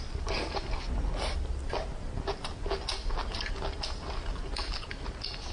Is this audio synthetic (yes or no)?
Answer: no